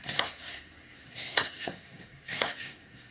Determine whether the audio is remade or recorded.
remade